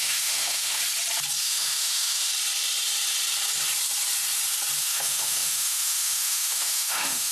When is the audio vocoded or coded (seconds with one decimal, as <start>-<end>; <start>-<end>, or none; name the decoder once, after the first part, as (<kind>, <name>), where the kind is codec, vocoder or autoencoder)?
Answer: 0.0-0.8 (autoencoder, DAC-VAE); 1.4-2.3; 4.8-7.3